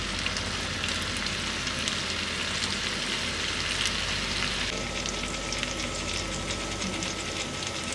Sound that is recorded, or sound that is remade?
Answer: recorded